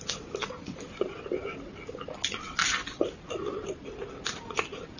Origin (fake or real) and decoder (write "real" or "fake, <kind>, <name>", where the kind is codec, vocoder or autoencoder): real